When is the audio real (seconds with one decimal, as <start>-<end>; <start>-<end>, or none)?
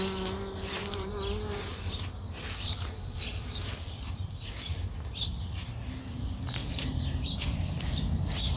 0.0-0.7; 4.6-6.6